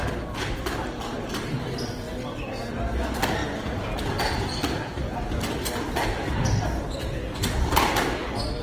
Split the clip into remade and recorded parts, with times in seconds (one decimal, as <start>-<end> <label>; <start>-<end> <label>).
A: 0.0-3.4 recorded; 3.4-4.0 remade; 4.0-8.6 recorded